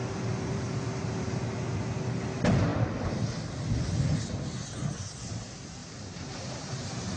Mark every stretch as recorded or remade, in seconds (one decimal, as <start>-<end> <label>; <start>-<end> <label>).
0.0-1.3 remade; 1.3-5.8 recorded; 5.8-7.2 remade